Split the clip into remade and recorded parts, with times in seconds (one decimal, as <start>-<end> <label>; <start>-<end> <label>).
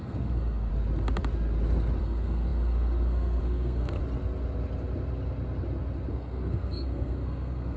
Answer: 0.0-0.7 remade; 0.7-2.0 recorded; 2.0-4.0 remade; 4.0-6.1 recorded; 6.1-7.8 remade